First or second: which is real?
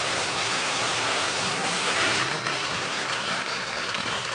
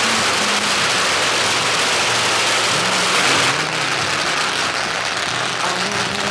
second